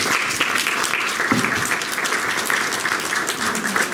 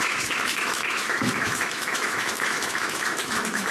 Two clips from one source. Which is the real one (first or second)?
first